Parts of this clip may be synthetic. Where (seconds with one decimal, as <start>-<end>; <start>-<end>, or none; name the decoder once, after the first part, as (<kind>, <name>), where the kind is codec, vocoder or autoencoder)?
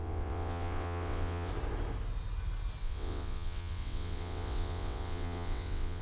0.0-1.5 (vocoder, WaveNeXt); 2.8-6.0